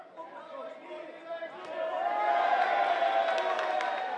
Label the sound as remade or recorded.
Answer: recorded